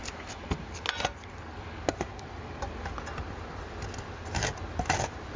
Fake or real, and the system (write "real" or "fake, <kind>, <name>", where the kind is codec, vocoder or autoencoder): real